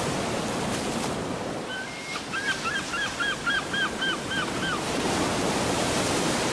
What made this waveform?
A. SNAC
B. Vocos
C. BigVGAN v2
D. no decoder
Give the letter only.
C